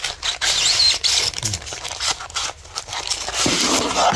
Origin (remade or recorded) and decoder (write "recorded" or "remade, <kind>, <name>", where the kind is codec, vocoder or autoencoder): recorded